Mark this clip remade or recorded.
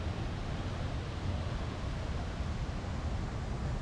recorded